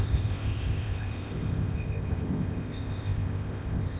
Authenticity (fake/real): fake